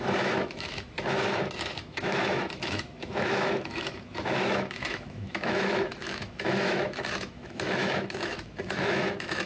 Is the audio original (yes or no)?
no